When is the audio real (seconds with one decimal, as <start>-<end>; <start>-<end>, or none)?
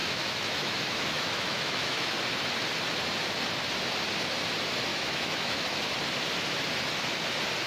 2.2-4.9; 5.8-7.7